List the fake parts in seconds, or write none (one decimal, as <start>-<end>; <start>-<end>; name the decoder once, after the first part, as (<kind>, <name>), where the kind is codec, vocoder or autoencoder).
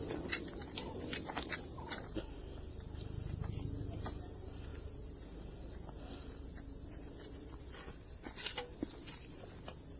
none